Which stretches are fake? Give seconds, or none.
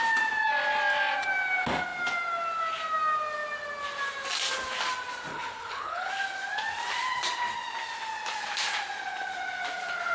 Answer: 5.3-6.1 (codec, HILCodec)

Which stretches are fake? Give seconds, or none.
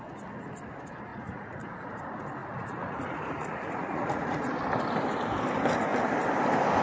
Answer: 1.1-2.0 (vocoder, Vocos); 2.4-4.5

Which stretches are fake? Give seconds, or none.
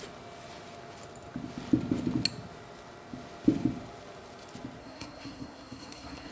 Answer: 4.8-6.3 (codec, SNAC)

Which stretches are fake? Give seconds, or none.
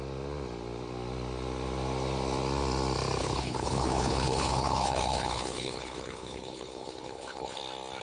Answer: 3.2-7.6 (codec, HILCodec)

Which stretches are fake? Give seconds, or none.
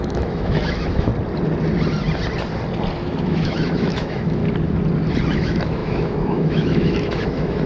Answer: 0.0-1.1 (autoencoder, DAC-VAE); 3.0-4.4; 5.3-7.7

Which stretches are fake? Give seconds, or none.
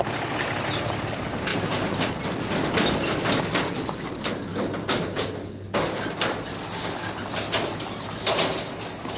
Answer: 1.5-2.1 (vocoder, BigVGAN v2)